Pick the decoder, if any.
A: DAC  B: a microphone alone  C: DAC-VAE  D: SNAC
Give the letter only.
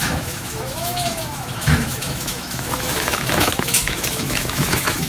C